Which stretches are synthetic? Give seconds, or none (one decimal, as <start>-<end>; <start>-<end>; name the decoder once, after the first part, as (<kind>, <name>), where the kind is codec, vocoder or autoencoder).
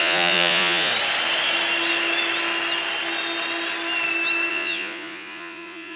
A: 0.0-0.9 (vocoder, Vocos); 4.5-6.0